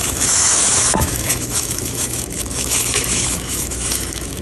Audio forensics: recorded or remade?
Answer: remade